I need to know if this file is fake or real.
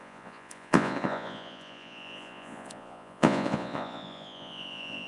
fake